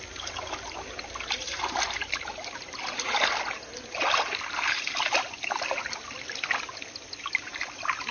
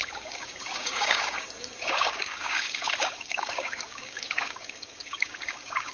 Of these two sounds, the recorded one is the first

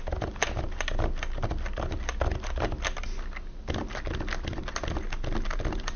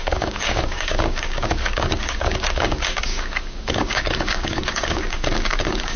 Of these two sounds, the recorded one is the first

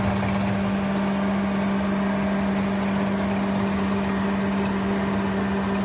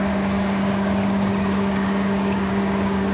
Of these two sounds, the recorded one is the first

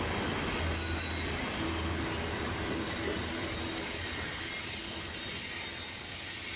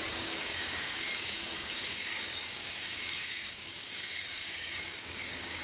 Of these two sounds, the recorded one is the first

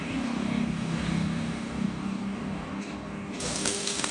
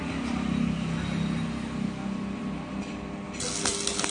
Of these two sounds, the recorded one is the second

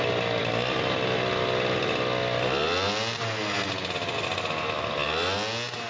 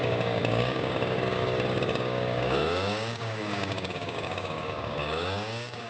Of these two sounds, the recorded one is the first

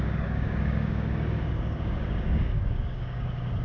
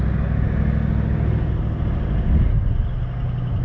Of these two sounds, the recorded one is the second